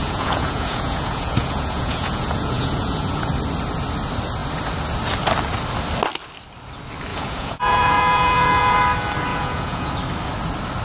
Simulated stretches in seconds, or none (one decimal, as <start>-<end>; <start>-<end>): 0.0-3.3; 7.1-8.8; 9.3-9.9